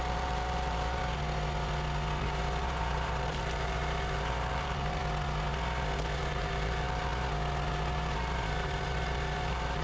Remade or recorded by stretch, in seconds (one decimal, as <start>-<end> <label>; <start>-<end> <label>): 0.0-1.0 remade; 1.0-2.2 recorded; 2.2-5.0 remade; 5.0-6.2 recorded; 6.2-7.1 remade; 7.1-7.7 recorded; 7.7-9.8 remade